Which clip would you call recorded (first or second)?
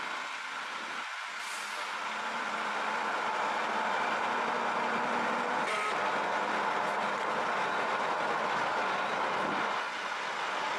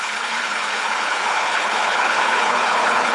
first